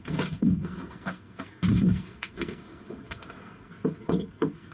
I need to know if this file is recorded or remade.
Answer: remade